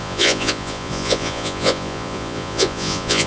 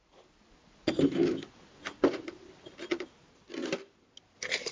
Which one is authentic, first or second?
second